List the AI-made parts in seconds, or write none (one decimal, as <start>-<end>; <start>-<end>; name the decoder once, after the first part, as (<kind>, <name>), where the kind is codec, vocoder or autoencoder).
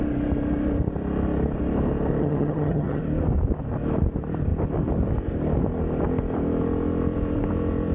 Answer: 2.2-3.0 (vocoder, HiFi-GAN)